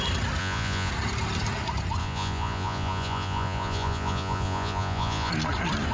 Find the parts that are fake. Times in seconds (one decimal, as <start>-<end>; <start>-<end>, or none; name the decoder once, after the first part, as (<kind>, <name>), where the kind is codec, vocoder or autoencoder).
0.4-0.9 (vocoder, Vocos); 2.0-5.3